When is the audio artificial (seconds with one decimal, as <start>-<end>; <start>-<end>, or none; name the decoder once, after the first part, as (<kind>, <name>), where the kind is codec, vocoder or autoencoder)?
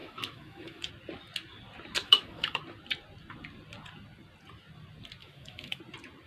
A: 0.0-0.9 (autoencoder, DAC-VAE); 2.0-2.6; 5.2-5.8